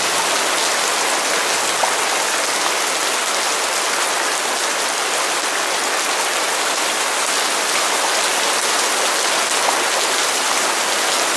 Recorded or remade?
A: recorded